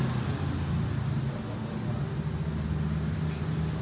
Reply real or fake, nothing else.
real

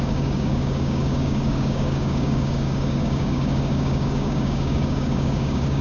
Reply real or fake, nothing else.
fake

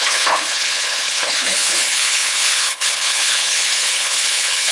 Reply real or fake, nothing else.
fake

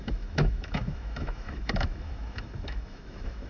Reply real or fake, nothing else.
fake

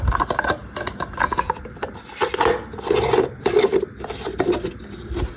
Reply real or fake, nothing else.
real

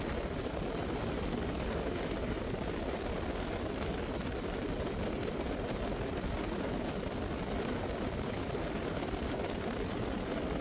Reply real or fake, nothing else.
real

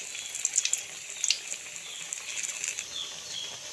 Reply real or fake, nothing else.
real